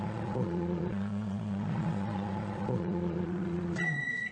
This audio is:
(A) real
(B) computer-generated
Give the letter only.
B